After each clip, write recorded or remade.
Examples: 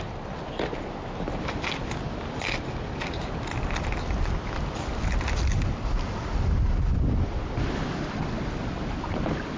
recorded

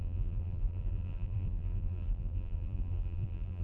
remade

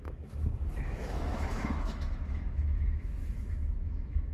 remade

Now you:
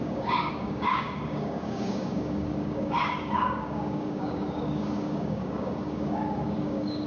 remade